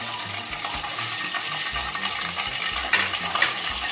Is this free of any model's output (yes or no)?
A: yes